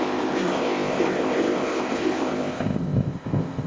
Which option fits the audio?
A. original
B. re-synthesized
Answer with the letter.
B